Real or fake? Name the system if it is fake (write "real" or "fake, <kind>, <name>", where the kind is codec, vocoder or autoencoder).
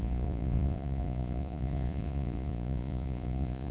fake, vocoder, Vocos